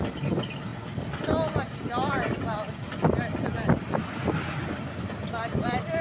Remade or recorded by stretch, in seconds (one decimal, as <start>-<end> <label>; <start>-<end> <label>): 0.0-6.0 recorded